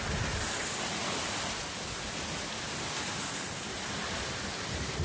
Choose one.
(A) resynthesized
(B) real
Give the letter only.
B